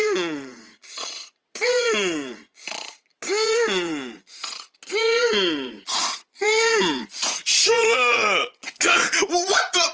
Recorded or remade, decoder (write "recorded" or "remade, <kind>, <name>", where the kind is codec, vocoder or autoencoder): remade, vocoder, Vocos